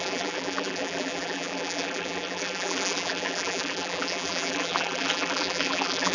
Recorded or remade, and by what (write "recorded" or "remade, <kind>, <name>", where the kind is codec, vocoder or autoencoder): remade, vocoder, BigVGAN v2